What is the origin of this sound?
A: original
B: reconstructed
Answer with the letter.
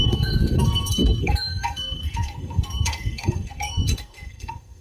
B